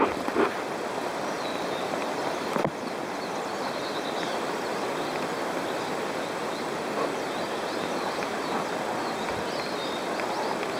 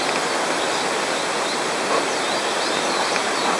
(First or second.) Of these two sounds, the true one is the second